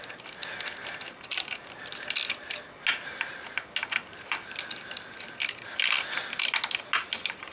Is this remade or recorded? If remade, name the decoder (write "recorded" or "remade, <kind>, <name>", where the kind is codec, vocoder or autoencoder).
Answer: recorded